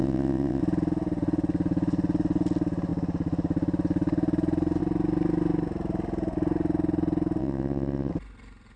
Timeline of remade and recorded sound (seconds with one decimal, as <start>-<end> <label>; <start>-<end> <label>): 0.0-0.6 remade; 0.6-7.4 recorded; 7.4-8.1 remade; 8.1-8.8 recorded